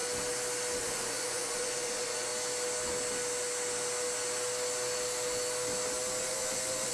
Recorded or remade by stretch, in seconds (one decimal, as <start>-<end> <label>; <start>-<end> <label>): 0.0-0.8 recorded; 0.8-2.3 remade; 2.3-6.2 recorded; 6.2-6.9 remade